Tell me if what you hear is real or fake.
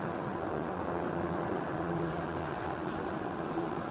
fake